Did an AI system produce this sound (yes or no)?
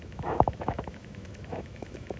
yes